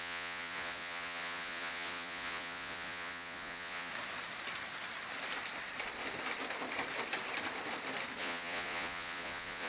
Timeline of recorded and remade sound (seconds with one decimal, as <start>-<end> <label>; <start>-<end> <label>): 0.0-3.9 remade; 3.9-8.2 recorded; 8.2-9.7 remade